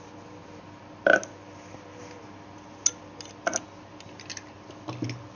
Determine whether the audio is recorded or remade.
recorded